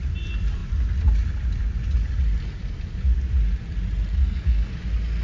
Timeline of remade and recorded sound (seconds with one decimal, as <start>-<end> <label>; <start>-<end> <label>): 0.0-4.2 recorded; 4.2-4.7 remade; 4.7-5.2 recorded